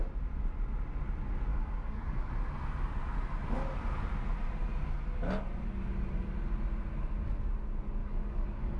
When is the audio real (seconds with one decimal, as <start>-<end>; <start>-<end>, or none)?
0.0-1.5; 2.3-8.0